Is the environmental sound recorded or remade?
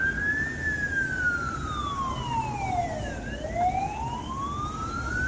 recorded